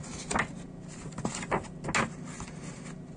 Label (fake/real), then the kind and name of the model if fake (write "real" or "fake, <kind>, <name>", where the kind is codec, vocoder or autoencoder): real